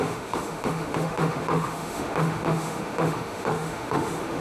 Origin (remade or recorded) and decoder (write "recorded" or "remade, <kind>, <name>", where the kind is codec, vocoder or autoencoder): remade, autoencoder, DAC-VAE